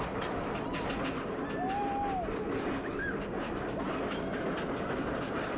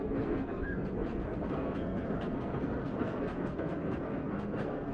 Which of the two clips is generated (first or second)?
second